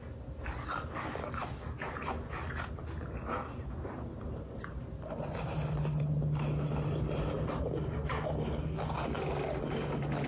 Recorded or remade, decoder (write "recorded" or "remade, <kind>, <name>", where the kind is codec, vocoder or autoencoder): recorded